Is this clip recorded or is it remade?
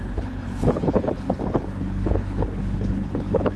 remade